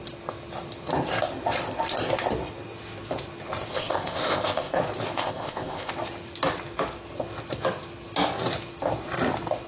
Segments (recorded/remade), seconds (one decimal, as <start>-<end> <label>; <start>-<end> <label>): 0.0-3.7 recorded; 3.7-4.8 remade; 4.8-5.2 recorded; 5.2-5.9 remade; 5.9-9.7 recorded